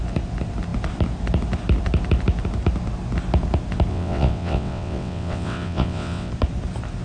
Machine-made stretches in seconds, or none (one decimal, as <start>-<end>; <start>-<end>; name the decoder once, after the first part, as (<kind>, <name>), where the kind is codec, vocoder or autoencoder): 3.9-6.3 (vocoder, WaveNeXt)